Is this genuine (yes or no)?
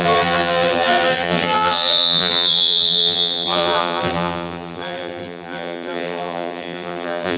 no